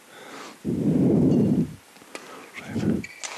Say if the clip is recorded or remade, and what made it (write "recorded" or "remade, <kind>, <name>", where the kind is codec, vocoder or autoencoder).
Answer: recorded